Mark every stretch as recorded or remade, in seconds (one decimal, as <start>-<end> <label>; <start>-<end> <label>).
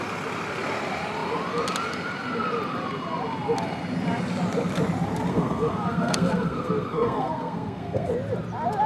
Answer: 0.0-5.3 recorded; 5.3-8.1 remade; 8.1-8.9 recorded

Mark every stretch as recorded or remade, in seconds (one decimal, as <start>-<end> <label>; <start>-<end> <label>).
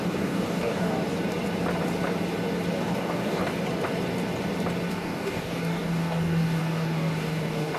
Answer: 0.0-0.9 remade; 0.9-2.8 recorded; 2.8-3.4 remade; 3.4-4.9 recorded; 4.9-7.8 remade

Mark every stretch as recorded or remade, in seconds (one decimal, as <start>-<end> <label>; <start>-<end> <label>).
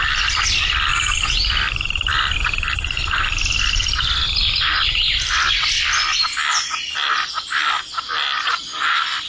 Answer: 0.0-0.9 remade; 0.9-1.5 recorded; 1.5-9.3 remade